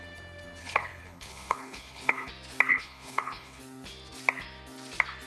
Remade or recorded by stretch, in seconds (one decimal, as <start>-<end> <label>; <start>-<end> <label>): 0.0-0.6 recorded; 0.6-2.3 remade; 2.3-2.7 recorded; 2.7-3.6 remade; 3.6-5.3 recorded